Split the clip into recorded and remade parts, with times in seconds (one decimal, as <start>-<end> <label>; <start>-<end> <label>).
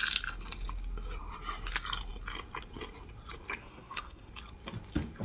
0.0-3.6 recorded; 3.6-4.3 remade; 4.3-5.2 recorded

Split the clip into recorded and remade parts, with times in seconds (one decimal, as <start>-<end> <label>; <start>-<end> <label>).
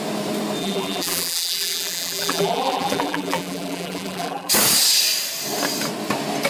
0.0-0.6 recorded; 0.6-4.5 remade; 4.5-6.5 recorded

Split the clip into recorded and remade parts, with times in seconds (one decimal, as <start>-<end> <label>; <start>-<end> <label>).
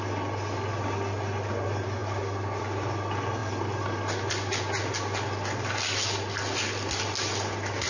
0.0-7.9 recorded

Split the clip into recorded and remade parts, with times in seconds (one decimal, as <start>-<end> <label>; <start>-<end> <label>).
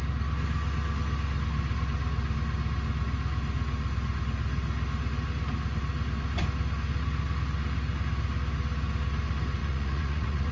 0.0-9.6 recorded; 9.6-10.5 remade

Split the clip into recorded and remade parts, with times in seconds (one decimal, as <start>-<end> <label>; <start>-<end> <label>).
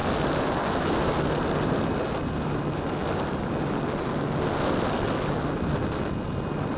0.0-6.8 recorded